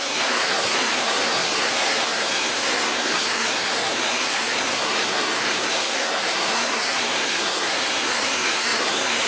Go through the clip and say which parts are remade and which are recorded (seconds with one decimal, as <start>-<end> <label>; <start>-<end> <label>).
0.0-9.3 remade